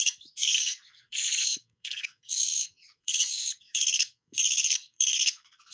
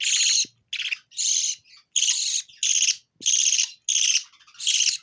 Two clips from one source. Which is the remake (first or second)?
first